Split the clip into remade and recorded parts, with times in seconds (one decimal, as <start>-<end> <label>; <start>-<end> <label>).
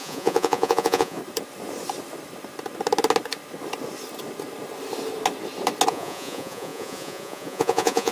0.0-1.2 remade; 1.2-5.9 recorded; 5.9-8.1 remade